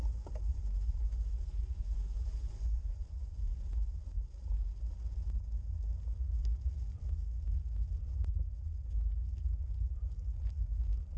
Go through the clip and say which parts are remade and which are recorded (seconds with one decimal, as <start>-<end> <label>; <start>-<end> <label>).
0.0-0.5 recorded; 0.5-3.4 remade; 3.4-11.2 recorded